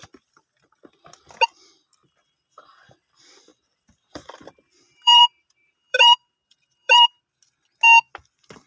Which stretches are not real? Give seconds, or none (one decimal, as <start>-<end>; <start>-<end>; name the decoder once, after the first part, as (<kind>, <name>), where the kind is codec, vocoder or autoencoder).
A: 3.5-7.2 (vocoder, BigVGAN v2)